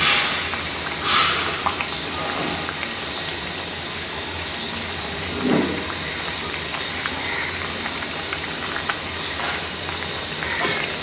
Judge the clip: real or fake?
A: fake